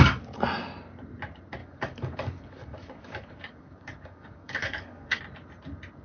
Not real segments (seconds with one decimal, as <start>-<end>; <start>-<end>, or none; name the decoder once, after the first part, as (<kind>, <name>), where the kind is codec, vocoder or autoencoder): 1.6-5.2 (codec, DAC)